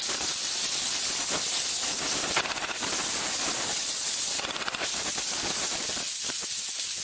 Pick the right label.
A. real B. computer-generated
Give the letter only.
B